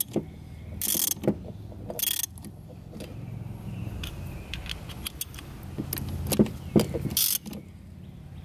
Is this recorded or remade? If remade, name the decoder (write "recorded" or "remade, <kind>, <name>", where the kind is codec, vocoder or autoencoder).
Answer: recorded